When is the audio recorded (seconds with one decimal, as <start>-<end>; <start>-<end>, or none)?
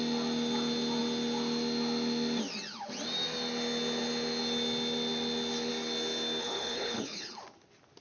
0.0-6.4; 7.4-8.0